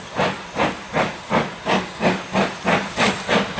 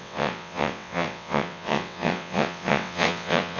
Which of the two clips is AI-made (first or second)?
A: second